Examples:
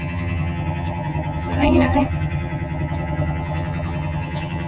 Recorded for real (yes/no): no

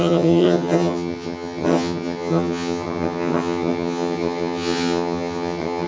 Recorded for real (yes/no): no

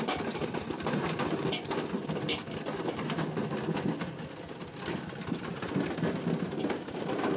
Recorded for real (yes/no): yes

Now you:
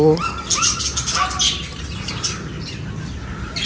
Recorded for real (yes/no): yes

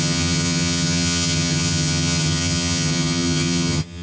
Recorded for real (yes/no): no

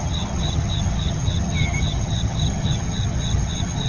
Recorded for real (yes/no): no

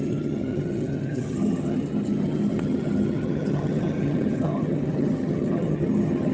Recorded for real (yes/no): no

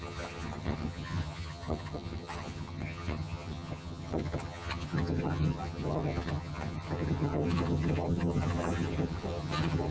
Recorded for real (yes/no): no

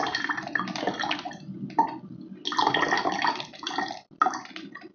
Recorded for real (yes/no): yes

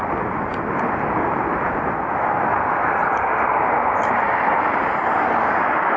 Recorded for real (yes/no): yes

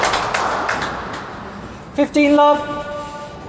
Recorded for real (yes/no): yes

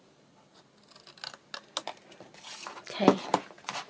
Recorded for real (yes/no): yes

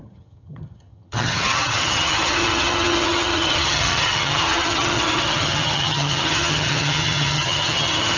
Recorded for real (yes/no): no